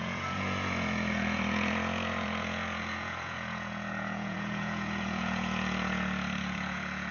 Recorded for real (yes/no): no